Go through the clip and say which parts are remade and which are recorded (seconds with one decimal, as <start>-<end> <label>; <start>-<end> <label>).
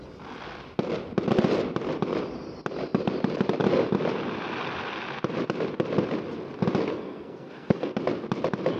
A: 0.0-6.9 recorded; 6.9-8.0 remade; 8.0-8.8 recorded